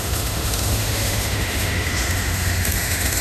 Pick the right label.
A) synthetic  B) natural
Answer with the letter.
A